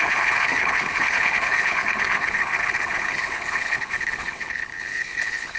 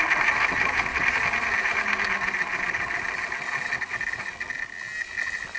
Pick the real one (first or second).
second